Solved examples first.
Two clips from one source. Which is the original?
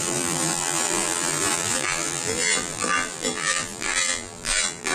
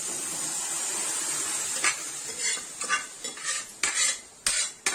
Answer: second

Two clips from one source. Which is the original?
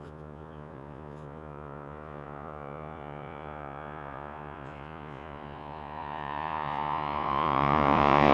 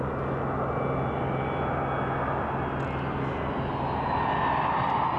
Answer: second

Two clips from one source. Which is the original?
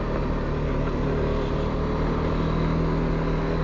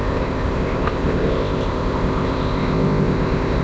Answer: first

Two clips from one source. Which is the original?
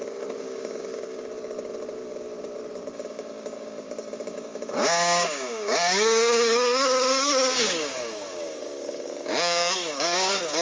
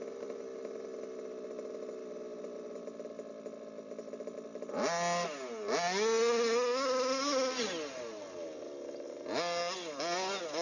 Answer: second